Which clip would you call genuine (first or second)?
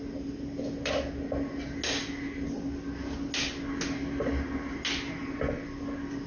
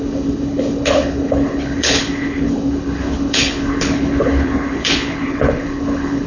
first